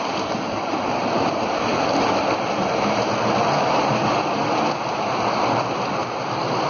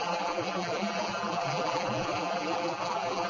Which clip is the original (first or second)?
first